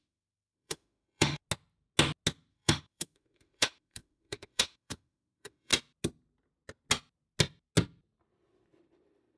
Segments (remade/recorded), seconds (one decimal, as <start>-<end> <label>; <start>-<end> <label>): 0.0-1.4 remade; 1.4-2.5 recorded; 2.5-5.7 remade; 5.7-9.4 recorded